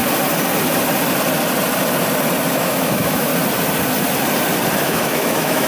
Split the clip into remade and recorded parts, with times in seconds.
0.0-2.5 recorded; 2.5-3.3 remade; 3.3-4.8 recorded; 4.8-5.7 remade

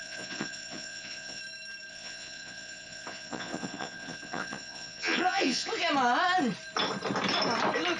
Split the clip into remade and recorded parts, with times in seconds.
0.0-1.4 remade; 1.4-1.9 recorded; 1.9-5.7 remade; 5.7-8.0 recorded

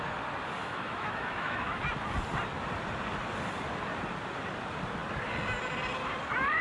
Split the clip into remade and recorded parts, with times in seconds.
0.0-0.6 recorded; 0.6-1.8 remade; 1.8-6.6 recorded

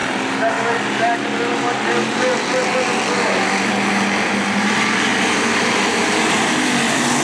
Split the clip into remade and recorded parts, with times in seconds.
0.0-7.2 recorded

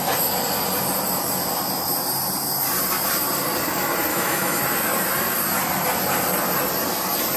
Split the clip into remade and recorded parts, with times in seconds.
0.0-4.1 recorded; 4.1-4.6 remade; 4.6-7.4 recorded